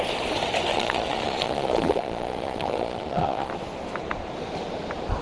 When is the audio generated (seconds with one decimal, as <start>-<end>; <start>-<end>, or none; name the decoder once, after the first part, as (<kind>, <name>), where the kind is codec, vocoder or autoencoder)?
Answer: 0.7-3.5 (vocoder, Vocos)